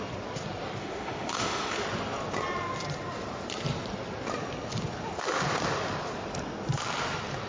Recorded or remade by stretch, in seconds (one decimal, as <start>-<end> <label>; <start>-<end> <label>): 0.0-0.8 recorded; 0.8-1.8 remade; 1.8-7.5 recorded